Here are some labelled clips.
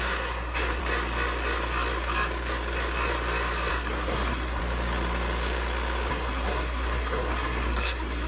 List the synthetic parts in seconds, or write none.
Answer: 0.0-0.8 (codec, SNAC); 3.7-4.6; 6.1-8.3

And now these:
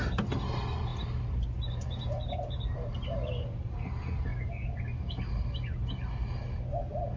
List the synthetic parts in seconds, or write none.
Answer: none

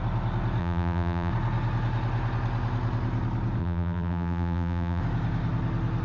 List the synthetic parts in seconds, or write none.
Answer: 0.6-1.3 (vocoder, BigVGAN v2); 3.6-5.0